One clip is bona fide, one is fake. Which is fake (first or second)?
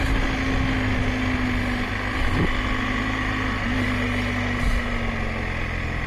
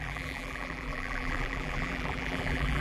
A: second